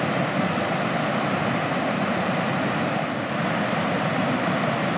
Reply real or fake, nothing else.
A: real